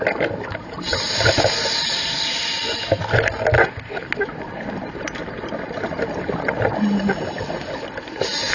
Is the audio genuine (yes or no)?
yes